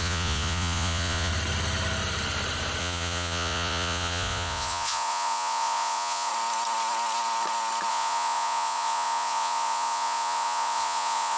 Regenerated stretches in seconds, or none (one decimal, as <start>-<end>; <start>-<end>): 0.0-1.3; 2.8-6.3; 7.9-11.4